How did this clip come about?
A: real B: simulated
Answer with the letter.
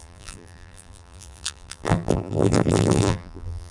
B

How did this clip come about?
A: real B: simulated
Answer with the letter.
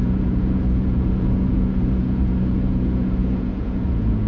B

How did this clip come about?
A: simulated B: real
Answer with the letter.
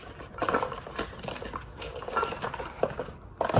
B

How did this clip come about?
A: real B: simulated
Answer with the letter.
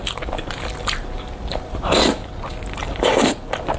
A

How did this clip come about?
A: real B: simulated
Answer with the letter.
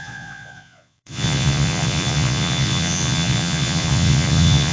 B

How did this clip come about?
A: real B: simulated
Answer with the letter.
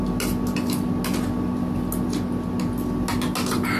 A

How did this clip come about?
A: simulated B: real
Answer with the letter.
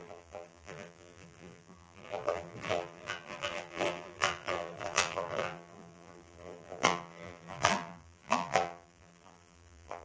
A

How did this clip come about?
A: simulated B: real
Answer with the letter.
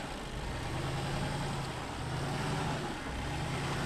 B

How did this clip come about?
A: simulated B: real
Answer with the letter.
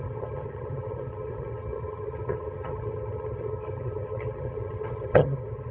A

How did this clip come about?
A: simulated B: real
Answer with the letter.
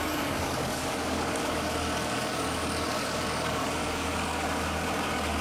A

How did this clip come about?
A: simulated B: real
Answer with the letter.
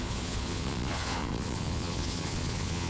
A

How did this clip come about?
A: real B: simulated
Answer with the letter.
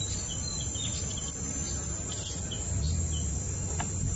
A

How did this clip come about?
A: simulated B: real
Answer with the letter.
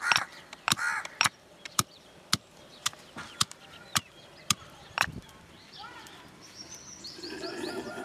A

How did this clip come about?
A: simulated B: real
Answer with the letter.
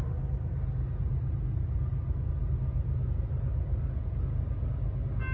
B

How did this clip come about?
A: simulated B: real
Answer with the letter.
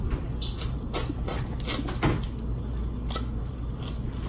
B